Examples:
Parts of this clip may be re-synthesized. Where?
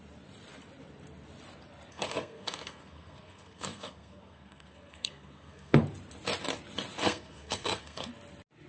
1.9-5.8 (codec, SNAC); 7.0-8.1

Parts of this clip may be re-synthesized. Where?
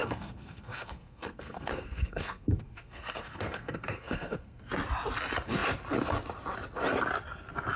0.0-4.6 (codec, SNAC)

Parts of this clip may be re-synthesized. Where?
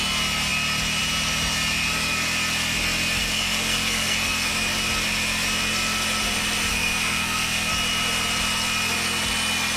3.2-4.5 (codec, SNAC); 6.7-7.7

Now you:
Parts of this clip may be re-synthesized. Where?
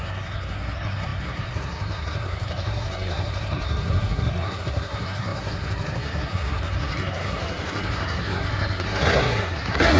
0.0-10.0 (codec, SNAC)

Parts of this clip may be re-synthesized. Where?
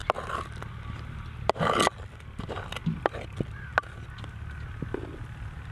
none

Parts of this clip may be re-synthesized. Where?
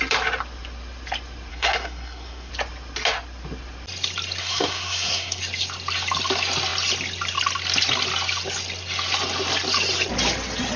1.5-2.5 (codec, SNAC); 4.4-5.4